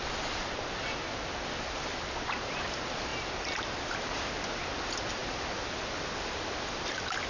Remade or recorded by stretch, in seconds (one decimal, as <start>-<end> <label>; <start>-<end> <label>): 0.0-7.3 recorded